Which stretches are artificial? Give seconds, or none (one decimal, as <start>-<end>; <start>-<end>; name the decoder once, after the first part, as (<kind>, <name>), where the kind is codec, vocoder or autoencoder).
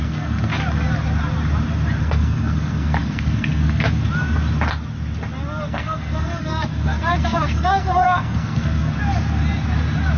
0.0-0.5 (codec, SNAC); 2.0-4.0; 5.6-9.0